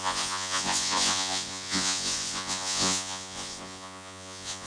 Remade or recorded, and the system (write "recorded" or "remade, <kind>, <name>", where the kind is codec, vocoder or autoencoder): remade, vocoder, Vocos